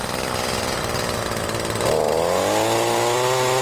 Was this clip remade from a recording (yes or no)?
no